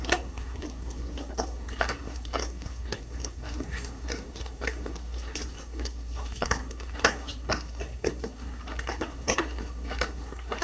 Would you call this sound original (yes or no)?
no